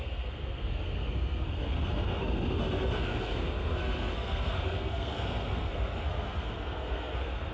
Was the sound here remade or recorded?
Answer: remade